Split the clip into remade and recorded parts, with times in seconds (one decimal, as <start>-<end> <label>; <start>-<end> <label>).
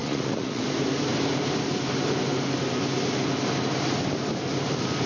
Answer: 0.0-0.6 remade; 0.6-5.1 recorded